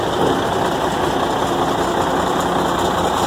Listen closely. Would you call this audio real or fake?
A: real